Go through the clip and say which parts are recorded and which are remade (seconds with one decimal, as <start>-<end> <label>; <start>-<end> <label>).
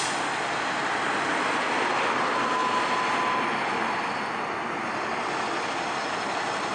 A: 0.0-6.7 recorded